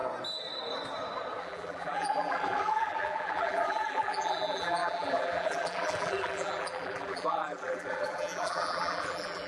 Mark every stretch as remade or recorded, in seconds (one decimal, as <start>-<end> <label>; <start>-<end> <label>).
0.0-1.4 recorded; 1.4-9.5 remade